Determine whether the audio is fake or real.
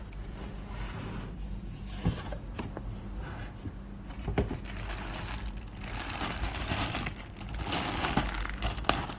real